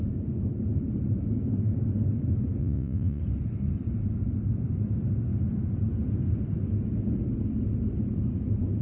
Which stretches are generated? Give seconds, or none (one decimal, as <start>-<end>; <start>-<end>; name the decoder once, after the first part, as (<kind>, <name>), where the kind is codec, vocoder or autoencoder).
2.6-3.2 (vocoder, Vocos)